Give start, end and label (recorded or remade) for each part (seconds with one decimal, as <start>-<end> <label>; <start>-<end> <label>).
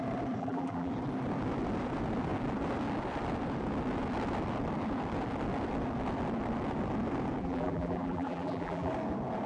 0.0-0.4 recorded; 0.4-0.9 remade; 0.9-7.4 recorded; 7.4-8.9 remade; 8.9-9.5 recorded